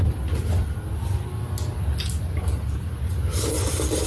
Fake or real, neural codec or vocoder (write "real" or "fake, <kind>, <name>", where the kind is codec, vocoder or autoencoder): real